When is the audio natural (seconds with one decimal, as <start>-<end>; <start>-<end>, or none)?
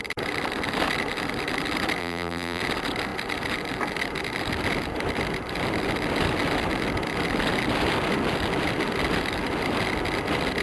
0.0-2.0; 2.6-10.6